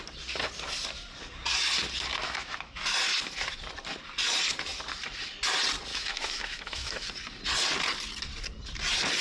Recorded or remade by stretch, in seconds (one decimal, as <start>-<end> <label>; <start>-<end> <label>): 0.0-2.2 recorded; 2.2-2.8 remade; 2.8-5.9 recorded; 5.9-7.1 remade; 7.1-9.2 recorded